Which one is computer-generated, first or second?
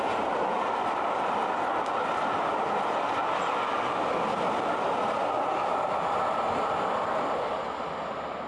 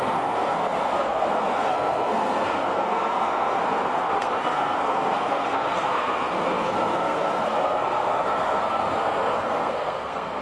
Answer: second